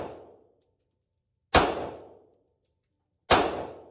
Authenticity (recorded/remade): recorded